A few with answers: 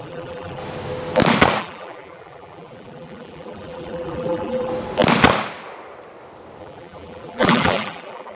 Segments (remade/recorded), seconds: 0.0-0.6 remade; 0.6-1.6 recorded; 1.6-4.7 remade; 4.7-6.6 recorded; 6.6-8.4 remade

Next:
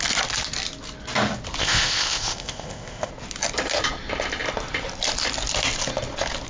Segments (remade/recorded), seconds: 0.0-1.6 recorded; 1.6-3.1 remade; 3.1-6.5 recorded

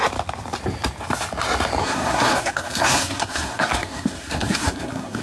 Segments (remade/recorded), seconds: 0.0-1.8 recorded; 1.8-5.2 remade